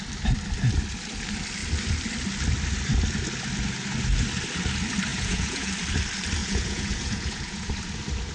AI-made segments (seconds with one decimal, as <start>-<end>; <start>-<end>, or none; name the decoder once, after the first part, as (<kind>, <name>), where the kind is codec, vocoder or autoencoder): 5.1-5.7 (vocoder, Vocos); 6.4-7.7